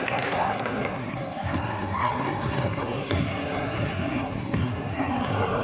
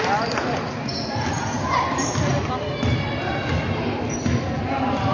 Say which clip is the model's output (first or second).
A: first